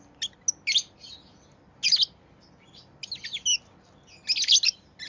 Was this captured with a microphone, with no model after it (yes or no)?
yes